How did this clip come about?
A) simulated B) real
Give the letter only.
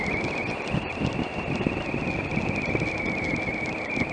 B